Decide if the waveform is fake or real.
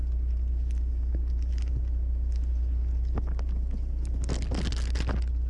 real